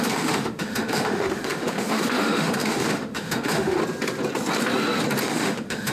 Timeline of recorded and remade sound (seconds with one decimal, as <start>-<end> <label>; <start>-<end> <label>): 0.0-3.8 remade; 3.8-5.2 recorded; 5.2-5.9 remade